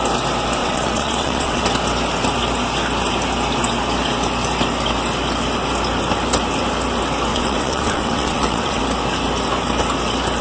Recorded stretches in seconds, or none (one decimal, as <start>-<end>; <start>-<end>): 0.0-0.6; 1.6-7.3; 8.8-10.4